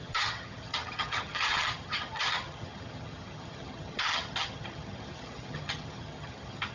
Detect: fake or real fake